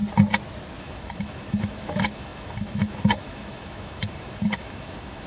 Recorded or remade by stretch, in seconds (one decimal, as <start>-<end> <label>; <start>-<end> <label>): 0.0-0.8 recorded; 0.8-5.3 remade